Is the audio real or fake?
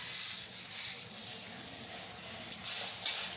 real